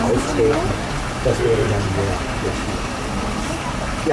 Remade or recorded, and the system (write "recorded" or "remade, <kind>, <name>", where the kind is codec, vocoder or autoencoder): recorded